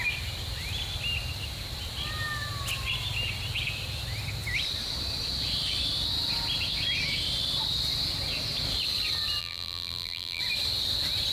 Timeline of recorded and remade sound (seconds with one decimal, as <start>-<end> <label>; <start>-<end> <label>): 0.0-9.4 recorded; 9.4-10.4 remade; 10.4-11.3 recorded

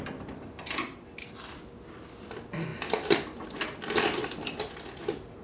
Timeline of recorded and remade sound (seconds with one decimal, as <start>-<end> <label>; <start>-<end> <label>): 0.0-5.4 recorded

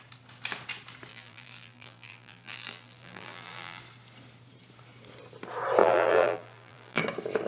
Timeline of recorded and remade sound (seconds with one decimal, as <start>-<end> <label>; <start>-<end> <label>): 0.0-1.1 recorded; 1.1-3.8 remade; 3.8-5.8 recorded; 5.8-7.0 remade; 7.0-7.5 recorded

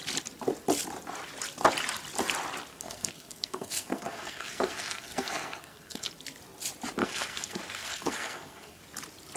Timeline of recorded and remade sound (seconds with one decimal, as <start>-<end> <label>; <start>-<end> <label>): 0.0-2.7 recorded; 2.7-6.1 remade; 6.1-7.0 recorded; 7.0-8.8 remade; 8.8-9.4 recorded

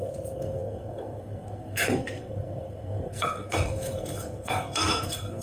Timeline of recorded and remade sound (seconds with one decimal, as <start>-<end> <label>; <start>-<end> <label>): 0.0-5.4 remade

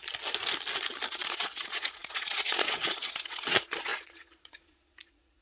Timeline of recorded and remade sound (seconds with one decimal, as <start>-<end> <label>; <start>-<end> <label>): 0.0-1.1 recorded; 1.1-5.4 remade

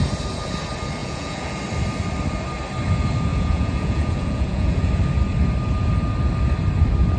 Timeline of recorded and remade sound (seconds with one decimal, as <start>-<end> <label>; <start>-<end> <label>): 0.0-1.0 recorded; 1.0-1.6 remade; 1.6-3.3 recorded; 3.3-4.9 remade; 4.9-7.2 recorded

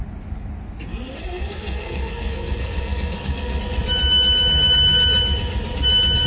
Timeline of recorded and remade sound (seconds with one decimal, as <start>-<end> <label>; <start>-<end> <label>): 0.0-1.2 recorded; 1.2-3.6 remade; 3.6-6.3 recorded